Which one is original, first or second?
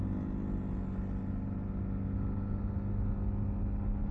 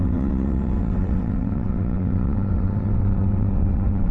first